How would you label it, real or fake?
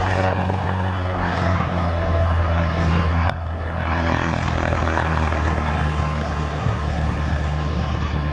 fake